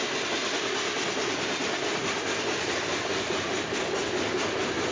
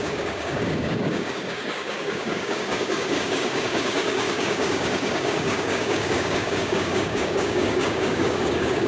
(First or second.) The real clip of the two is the first